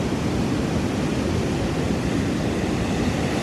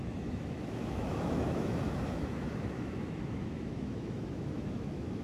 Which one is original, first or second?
first